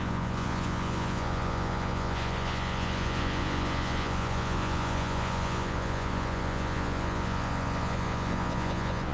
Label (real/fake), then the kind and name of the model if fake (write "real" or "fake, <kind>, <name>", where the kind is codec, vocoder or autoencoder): fake, vocoder, Vocos